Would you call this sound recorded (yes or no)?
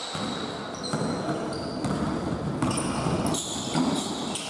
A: yes